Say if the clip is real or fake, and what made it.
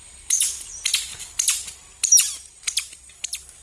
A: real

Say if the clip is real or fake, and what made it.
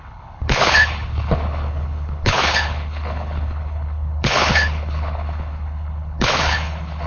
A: fake, codec, HILCodec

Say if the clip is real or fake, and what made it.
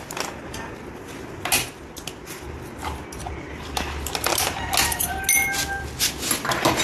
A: real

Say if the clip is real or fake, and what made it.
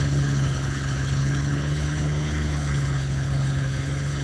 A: fake, codec, HILCodec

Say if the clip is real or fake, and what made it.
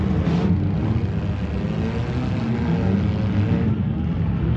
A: real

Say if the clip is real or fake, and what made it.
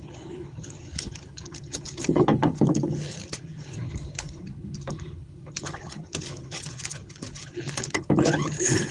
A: fake, codec, HILCodec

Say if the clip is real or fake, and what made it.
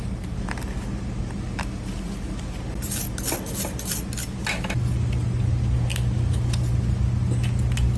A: real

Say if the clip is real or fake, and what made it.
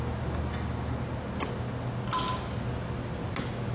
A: real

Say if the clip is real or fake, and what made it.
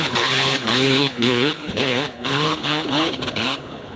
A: fake, codec, HILCodec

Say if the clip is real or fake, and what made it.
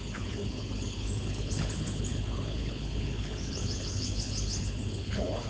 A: fake, codec, HILCodec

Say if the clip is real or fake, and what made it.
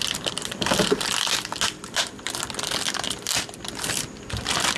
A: real